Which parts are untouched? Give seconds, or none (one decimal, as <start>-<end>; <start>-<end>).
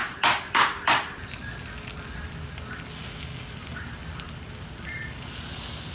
0.0-5.9